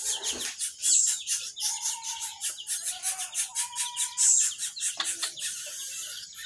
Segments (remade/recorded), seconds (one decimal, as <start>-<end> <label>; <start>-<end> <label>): 0.0-6.5 recorded